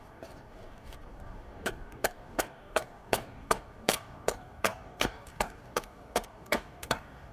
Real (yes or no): no